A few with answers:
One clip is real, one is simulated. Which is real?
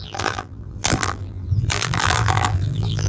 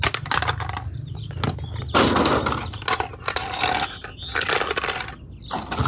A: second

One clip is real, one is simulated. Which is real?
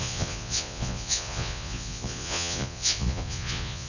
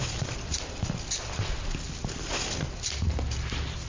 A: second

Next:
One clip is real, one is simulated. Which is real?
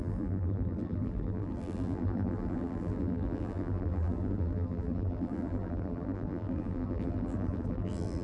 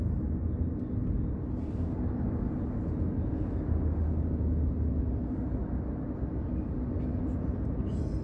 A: second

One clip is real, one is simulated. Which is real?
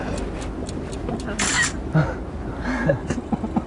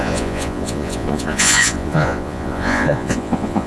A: first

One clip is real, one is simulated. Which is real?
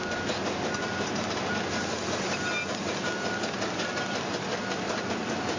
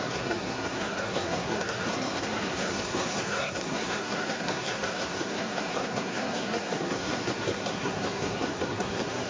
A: first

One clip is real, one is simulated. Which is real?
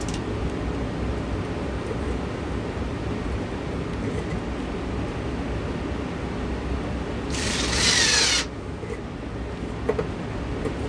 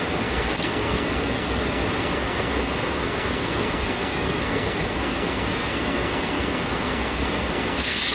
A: first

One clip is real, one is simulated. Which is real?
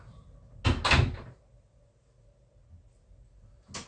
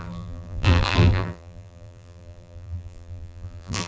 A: first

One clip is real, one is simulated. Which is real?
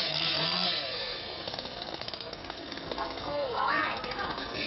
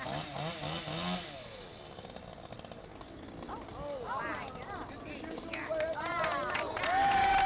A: second